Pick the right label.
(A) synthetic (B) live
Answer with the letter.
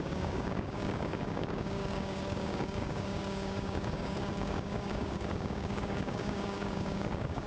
A